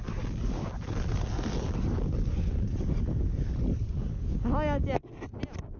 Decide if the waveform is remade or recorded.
recorded